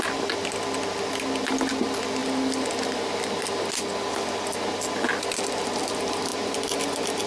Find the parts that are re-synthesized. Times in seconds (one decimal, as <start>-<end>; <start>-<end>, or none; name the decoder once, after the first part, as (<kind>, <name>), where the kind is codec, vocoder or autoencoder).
none

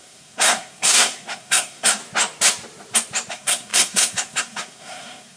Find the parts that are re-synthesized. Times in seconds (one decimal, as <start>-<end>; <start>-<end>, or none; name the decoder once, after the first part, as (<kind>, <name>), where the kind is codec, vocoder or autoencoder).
0.0-2.0 (codec, SNAC); 3.3-5.4

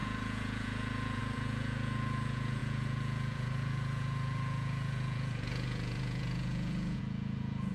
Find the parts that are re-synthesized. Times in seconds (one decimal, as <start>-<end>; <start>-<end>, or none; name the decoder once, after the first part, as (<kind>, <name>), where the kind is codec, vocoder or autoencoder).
0.0-7.7 (vocoder, Vocos)

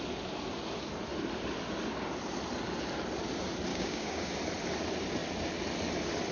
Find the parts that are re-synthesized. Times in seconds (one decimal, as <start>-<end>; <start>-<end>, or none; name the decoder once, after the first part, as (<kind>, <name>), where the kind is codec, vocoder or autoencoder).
3.7-4.3 (codec, DAC)

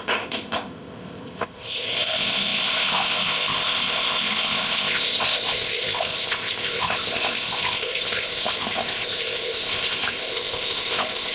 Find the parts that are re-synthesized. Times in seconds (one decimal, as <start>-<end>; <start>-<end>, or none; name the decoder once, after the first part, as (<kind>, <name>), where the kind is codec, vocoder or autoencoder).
0.0-11.3 (codec, ZipCodec)

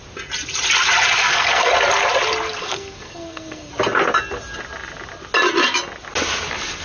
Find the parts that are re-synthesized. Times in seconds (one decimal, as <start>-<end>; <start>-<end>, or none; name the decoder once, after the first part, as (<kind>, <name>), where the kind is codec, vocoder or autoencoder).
1.2-1.7 (codec, SNAC); 2.6-3.7

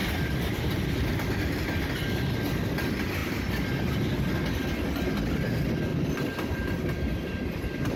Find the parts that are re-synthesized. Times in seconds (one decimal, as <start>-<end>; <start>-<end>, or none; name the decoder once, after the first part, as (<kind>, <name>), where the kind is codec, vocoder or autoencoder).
3.2-3.9 (vocoder, BigVGAN v2); 5.9-8.0

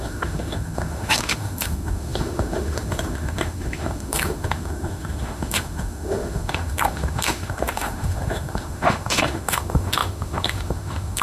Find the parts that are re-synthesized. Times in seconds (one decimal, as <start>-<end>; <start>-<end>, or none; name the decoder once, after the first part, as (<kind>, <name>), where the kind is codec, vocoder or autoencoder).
0.0-11.2 (autoencoder, DAC-VAE)